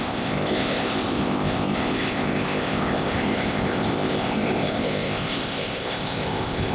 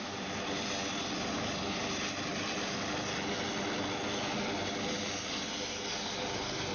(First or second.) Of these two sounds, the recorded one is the second